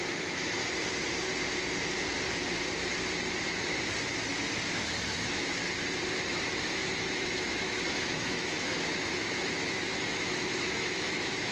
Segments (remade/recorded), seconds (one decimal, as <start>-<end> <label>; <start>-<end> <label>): 0.0-0.6 remade; 0.6-4.6 recorded; 4.6-5.6 remade; 5.6-6.5 recorded; 6.5-11.5 remade

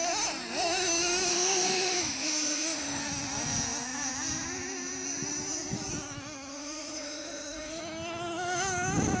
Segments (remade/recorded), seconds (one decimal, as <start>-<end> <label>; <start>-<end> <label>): 0.0-1.3 recorded; 1.3-3.0 remade; 3.0-6.5 recorded; 6.5-7.8 remade; 7.8-9.2 recorded

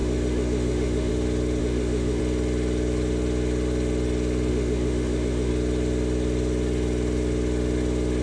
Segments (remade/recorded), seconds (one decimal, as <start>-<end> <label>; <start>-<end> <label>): 0.0-1.1 remade; 1.1-1.6 recorded; 1.6-2.2 remade; 2.2-4.5 recorded; 4.5-5.5 remade; 5.5-8.2 recorded

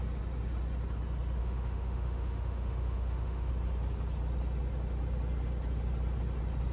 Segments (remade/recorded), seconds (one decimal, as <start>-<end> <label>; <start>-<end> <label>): 0.0-1.4 recorded; 1.4-3.5 remade; 3.5-6.7 recorded

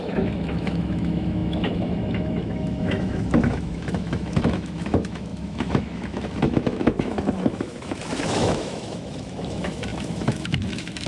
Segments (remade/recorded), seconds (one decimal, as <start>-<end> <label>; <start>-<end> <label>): 0.0-11.1 remade

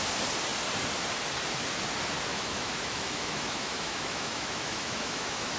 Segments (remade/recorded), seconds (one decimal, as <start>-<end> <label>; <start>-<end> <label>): 0.0-2.3 recorded; 2.3-5.6 remade